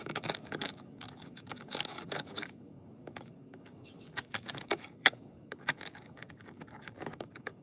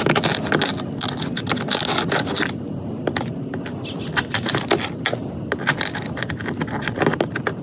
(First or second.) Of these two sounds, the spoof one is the first